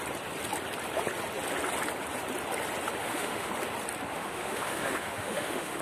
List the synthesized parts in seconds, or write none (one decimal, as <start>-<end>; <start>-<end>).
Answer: 3.0-3.5; 4.1-5.8